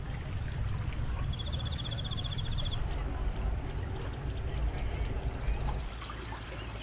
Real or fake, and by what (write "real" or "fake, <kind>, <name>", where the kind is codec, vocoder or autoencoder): real